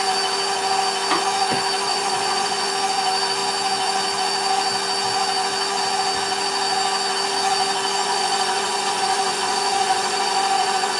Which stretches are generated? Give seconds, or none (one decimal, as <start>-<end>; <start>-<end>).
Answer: 1.9-2.7; 8.0-11.0